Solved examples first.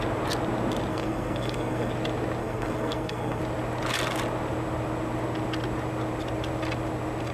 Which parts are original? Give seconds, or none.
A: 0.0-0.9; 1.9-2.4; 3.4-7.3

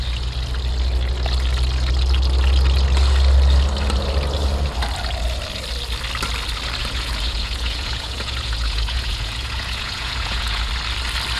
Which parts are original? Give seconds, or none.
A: 0.0-6.8; 10.7-11.4

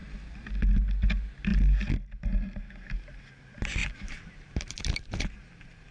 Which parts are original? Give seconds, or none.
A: 0.5-3.8; 5.2-5.9

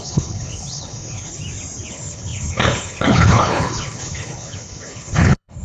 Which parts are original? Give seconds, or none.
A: 1.4-1.9